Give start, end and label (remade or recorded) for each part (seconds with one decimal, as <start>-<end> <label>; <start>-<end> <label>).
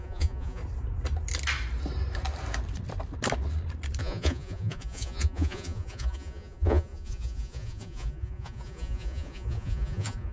0.0-0.6 remade; 0.6-4.0 recorded; 4.0-10.3 remade